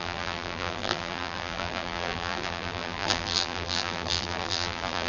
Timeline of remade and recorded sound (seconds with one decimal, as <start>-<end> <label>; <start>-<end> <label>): 0.0-5.1 remade